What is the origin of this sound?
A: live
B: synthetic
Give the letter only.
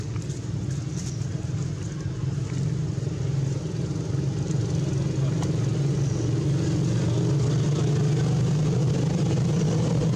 A